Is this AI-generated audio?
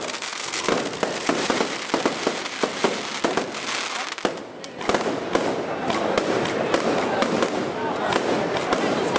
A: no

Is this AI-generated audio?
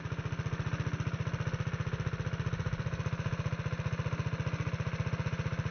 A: no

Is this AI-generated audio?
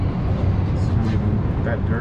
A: no